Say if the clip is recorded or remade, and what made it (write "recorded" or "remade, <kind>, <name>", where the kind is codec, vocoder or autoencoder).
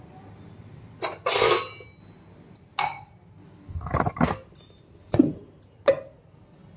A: recorded